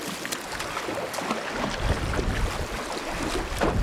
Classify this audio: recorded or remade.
recorded